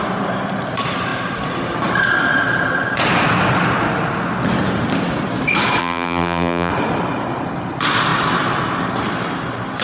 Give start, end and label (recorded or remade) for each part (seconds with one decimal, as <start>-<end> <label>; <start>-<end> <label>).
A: 0.0-5.8 recorded; 5.8-6.7 remade; 6.7-9.8 recorded